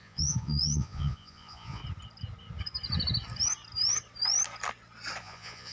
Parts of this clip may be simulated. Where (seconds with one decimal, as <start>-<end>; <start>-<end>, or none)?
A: 0.0-1.8; 5.2-5.7